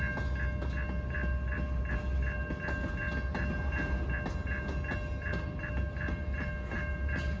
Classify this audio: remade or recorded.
recorded